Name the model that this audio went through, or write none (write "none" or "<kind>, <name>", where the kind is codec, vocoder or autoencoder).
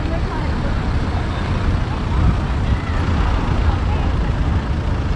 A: none